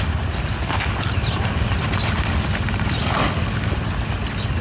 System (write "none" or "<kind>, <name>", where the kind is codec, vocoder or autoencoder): none